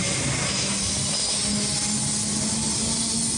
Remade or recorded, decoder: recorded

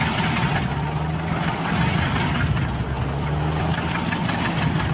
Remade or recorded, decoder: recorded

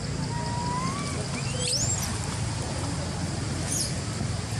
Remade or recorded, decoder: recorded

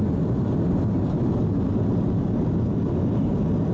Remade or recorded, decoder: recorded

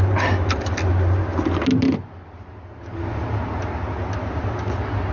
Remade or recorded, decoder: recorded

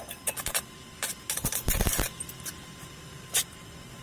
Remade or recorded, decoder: recorded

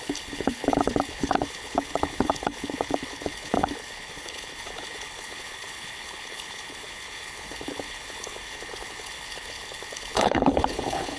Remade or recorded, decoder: remade, codec, HILCodec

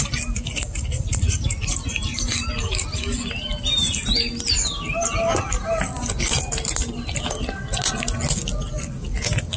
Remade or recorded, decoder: recorded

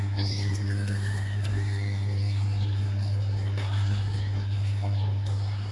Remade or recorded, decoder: remade, codec, SNAC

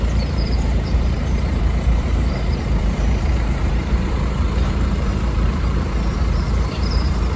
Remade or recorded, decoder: remade, vocoder, BigVGAN v2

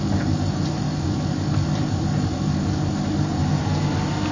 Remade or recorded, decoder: recorded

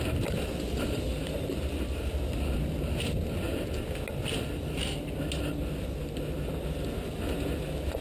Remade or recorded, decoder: recorded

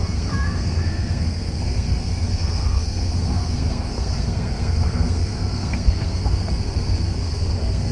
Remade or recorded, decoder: remade, codec, SNAC